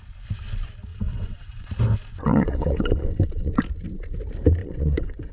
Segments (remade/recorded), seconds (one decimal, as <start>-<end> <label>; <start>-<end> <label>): 0.0-0.9 recorded; 0.9-1.7 remade; 1.7-2.2 recorded; 2.2-3.5 remade; 3.5-4.6 recorded; 4.6-5.3 remade